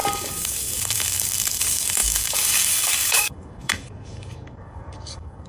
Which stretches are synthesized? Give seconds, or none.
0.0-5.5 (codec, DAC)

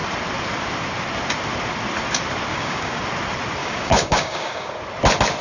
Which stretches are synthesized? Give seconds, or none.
2.5-3.0 (codec, DAC); 3.6-4.7

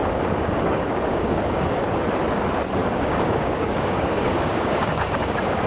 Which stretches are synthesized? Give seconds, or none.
0.0-1.8 (codec, DAC); 2.8-5.7

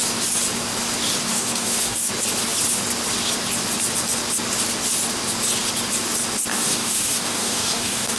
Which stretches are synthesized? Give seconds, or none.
1.3-2.1 (codec, DAC); 6.5-8.2

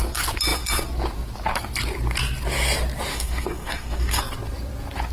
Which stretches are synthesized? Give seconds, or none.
3.1-4.2 (codec, DAC)